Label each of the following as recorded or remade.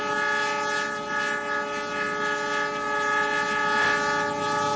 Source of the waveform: recorded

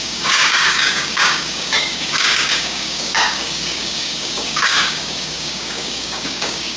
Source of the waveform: remade